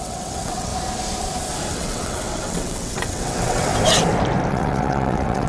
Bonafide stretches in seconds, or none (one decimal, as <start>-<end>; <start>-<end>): 0.7-1.7; 3.7-4.5